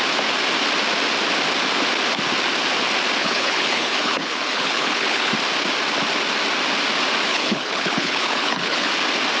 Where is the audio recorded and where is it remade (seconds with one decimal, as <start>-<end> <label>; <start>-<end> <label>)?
0.0-3.2 recorded; 3.2-5.3 remade; 5.3-7.3 recorded; 7.3-8.9 remade; 8.9-9.4 recorded